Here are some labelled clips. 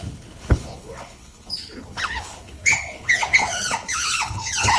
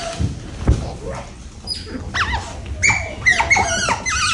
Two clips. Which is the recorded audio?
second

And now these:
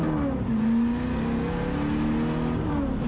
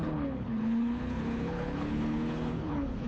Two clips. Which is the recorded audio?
first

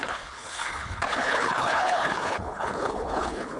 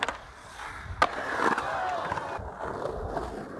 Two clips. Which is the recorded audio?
second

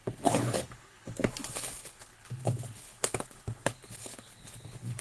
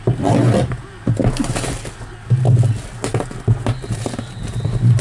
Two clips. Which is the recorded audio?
second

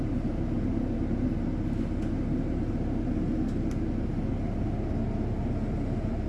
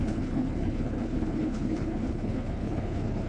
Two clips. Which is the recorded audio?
first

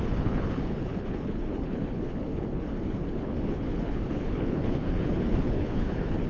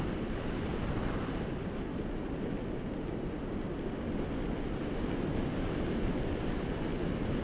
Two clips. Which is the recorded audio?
second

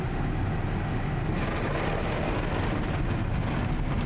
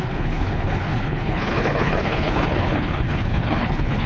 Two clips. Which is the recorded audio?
first